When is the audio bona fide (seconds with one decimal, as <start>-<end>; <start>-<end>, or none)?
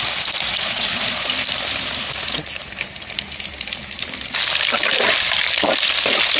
0.0-0.5; 1.3-6.4